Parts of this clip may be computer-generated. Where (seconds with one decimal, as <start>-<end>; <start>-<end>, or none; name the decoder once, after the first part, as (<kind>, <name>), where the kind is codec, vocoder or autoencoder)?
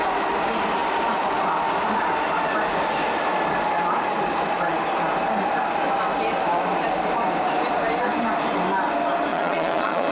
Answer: 9.3-10.1 (vocoder, Vocos)